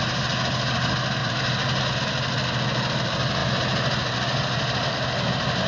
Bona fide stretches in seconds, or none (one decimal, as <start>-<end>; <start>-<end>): 0.0-1.2; 1.8-5.7